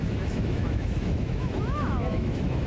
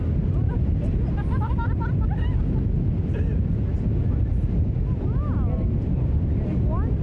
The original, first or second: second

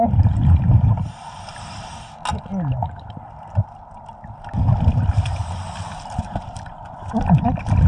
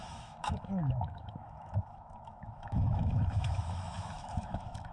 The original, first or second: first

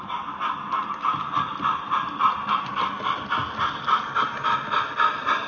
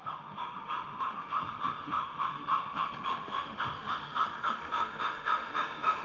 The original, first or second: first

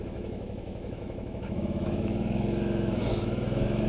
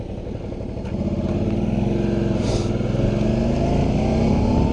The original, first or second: second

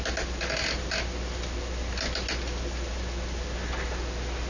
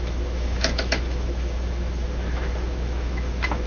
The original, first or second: first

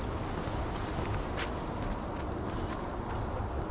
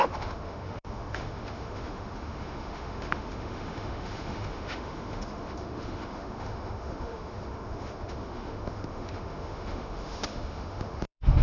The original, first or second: first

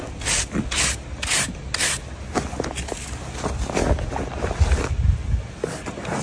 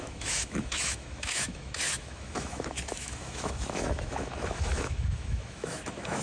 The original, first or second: first